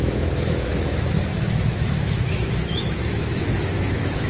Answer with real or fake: fake